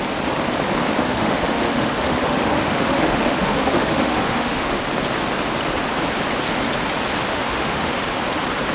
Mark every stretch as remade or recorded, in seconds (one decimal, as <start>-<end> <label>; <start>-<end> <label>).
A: 0.0-0.8 recorded; 0.8-4.8 remade; 4.8-7.3 recorded; 7.3-7.9 remade; 7.9-8.7 recorded